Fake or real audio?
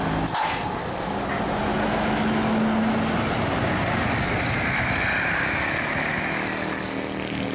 real